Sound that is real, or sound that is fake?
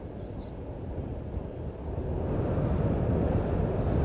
real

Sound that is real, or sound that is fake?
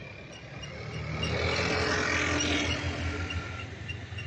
real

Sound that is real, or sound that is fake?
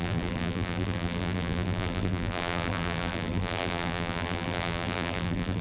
fake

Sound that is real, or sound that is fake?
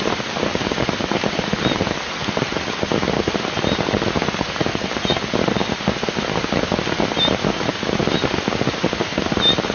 real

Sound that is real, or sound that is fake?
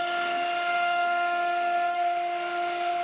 real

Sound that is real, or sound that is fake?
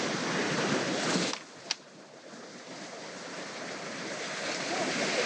real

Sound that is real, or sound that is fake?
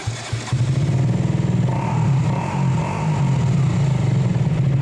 real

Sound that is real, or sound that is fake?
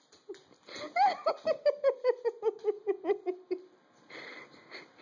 real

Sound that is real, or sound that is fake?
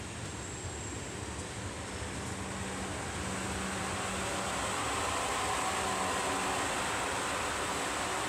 real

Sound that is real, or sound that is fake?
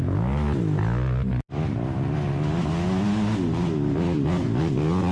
real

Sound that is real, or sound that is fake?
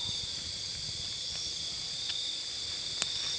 real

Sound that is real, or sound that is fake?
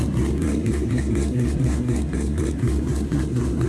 fake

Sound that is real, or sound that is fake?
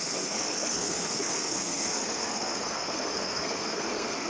fake